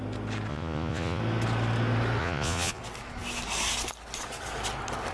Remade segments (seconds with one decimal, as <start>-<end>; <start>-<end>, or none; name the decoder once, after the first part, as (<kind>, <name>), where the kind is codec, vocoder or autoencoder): 0.5-1.2 (vocoder, Vocos); 2.2-2.8